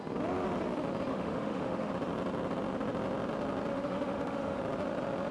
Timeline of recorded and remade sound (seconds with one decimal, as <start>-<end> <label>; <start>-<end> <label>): 0.0-1.1 recorded; 1.1-1.9 remade; 1.9-3.7 recorded; 3.7-4.6 remade; 4.6-5.3 recorded

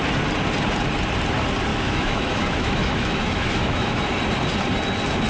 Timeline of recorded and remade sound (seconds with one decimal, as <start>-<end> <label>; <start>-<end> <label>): 0.0-1.7 recorded; 1.7-4.1 remade; 4.1-5.3 recorded

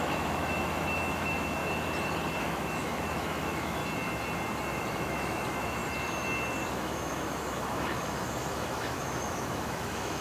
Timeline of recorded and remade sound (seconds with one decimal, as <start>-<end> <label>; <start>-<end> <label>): 0.0-1.6 remade; 1.6-2.4 recorded; 2.4-3.8 remade; 3.8-4.8 recorded; 4.8-5.8 remade; 5.8-6.7 recorded; 6.7-10.2 remade

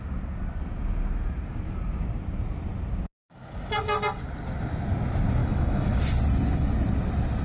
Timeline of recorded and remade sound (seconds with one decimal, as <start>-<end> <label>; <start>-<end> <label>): 0.0-5.4 recorded; 5.4-6.0 remade; 6.0-7.4 recorded

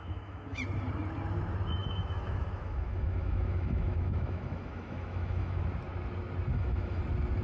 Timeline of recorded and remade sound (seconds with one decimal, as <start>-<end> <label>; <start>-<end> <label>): 0.0-0.6 remade; 0.6-1.8 recorded; 1.8-5.6 remade; 5.6-6.5 recorded; 6.5-7.0 remade; 7.0-7.4 recorded

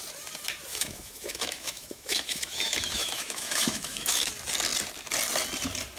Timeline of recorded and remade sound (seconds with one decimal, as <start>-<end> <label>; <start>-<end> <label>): 0.0-0.7 recorded; 0.7-4.3 remade; 4.3-6.0 recorded

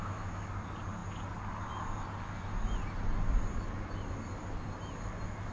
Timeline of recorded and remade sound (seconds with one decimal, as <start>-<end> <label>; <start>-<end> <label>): 0.0-0.5 remade; 0.5-5.5 recorded